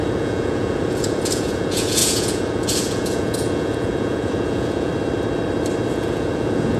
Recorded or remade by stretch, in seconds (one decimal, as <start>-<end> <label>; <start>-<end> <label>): 0.0-4.9 remade; 4.9-5.9 recorded; 5.9-6.8 remade